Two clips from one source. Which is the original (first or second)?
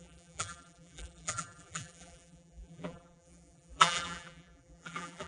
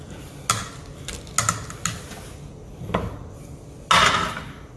second